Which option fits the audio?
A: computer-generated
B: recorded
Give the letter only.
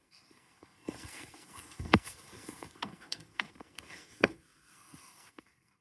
A